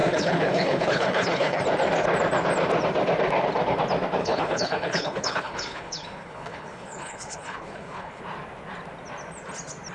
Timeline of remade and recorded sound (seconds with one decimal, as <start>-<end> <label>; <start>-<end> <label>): 0.0-1.6 remade; 1.6-4.2 recorded; 4.2-8.2 remade; 8.2-9.9 recorded